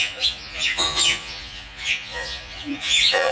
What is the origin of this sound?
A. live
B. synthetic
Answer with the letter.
B